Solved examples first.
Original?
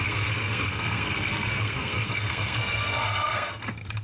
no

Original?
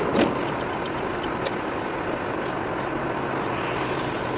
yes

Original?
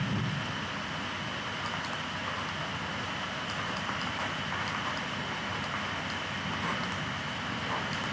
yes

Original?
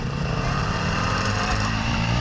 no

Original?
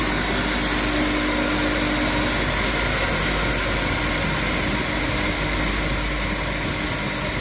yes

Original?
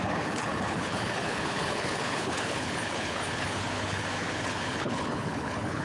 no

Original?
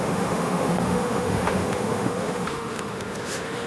no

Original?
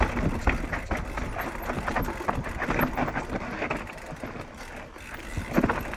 yes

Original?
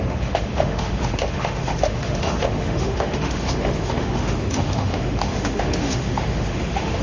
no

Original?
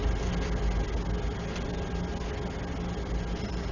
yes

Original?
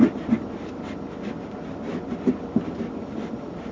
yes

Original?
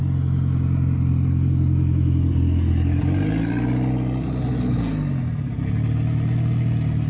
yes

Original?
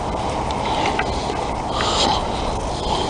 yes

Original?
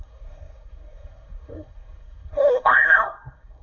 no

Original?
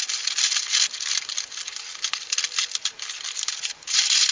no